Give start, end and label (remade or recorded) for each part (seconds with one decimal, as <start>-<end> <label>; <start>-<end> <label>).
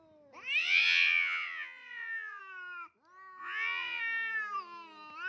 0.0-0.6 recorded; 0.6-2.4 remade; 2.4-3.4 recorded; 3.4-4.0 remade; 4.0-5.3 recorded